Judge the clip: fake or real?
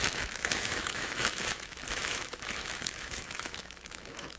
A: fake